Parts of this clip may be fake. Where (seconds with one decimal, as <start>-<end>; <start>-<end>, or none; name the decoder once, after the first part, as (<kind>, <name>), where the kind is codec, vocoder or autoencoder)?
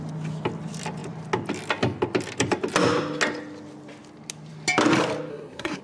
5.3-5.8 (codec, SNAC)